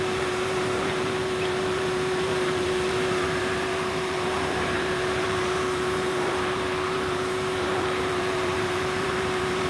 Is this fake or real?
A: fake